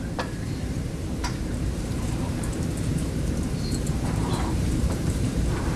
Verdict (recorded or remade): remade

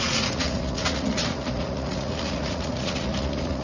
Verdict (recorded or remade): remade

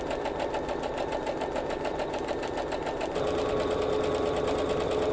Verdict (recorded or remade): recorded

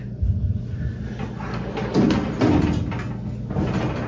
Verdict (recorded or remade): recorded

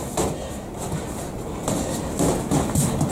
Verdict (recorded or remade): recorded